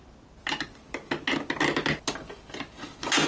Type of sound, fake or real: real